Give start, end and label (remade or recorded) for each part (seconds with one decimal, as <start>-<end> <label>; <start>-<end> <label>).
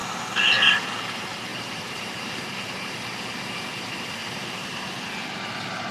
0.0-1.5 recorded; 1.5-3.2 remade; 3.2-4.2 recorded; 4.2-4.7 remade; 4.7-5.9 recorded